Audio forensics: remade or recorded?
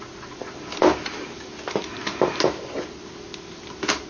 recorded